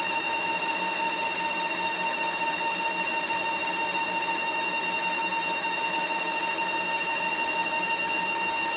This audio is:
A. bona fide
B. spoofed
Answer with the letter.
B